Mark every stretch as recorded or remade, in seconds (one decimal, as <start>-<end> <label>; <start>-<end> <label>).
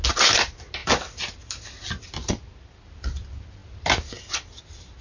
0.0-5.0 recorded